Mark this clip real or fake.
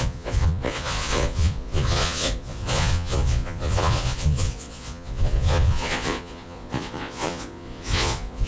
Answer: fake